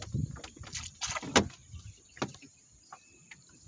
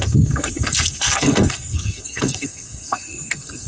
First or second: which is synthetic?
second